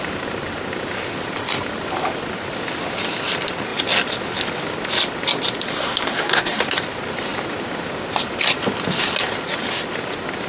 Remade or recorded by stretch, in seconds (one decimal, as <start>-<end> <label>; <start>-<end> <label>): 0.0-5.7 recorded; 5.7-6.6 remade; 6.6-10.5 recorded